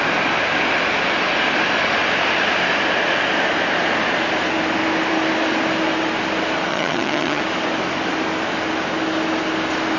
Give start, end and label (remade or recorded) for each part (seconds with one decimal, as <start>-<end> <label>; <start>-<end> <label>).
0.0-6.7 recorded; 6.7-7.4 remade; 7.4-10.0 recorded